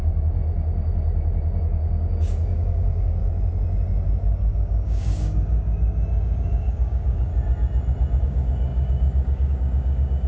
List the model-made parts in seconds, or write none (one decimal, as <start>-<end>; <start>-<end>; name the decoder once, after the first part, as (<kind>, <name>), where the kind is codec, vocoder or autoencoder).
0.0-0.4 (codec, DAC); 1.6-3.2; 4.5-7.3; 8.2-10.3